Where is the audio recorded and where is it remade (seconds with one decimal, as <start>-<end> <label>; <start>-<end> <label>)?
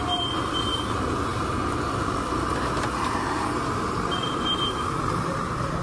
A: 0.0-5.8 recorded